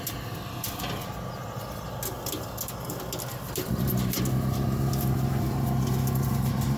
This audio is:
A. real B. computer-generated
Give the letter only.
A